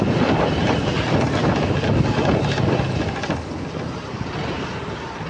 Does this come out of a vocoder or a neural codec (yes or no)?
no